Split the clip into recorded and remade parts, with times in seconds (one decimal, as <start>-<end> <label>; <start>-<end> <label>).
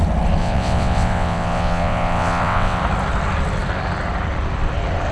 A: 0.0-0.4 recorded; 0.4-2.8 remade; 2.8-5.1 recorded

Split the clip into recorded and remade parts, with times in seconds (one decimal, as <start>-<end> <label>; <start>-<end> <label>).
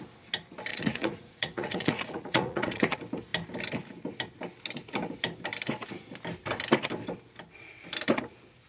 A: 0.0-0.7 recorded; 0.7-2.9 remade; 2.9-8.7 recorded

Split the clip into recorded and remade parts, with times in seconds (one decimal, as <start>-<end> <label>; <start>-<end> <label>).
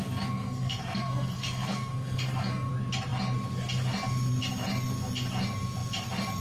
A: 0.0-2.7 remade; 2.7-6.4 recorded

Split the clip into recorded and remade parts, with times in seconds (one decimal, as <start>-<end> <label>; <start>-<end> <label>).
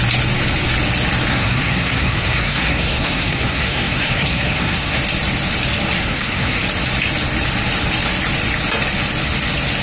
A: 0.0-1.3 recorded; 1.3-5.0 remade; 5.0-6.0 recorded; 6.0-6.6 remade; 6.6-9.8 recorded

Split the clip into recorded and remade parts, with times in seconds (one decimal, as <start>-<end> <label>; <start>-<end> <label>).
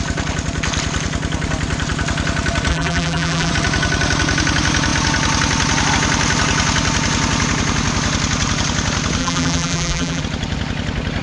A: 0.0-2.7 recorded; 2.7-3.5 remade; 3.5-9.2 recorded; 9.2-10.2 remade; 10.2-11.2 recorded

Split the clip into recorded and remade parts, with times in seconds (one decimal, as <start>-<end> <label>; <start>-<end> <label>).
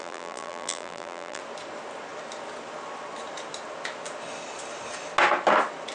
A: 0.0-1.4 remade; 1.4-5.9 recorded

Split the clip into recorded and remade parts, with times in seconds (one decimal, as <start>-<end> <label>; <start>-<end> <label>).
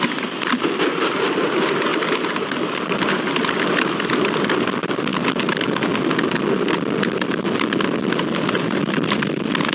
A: 0.0-1.9 remade; 1.9-3.2 recorded; 3.2-5.1 remade; 5.1-9.7 recorded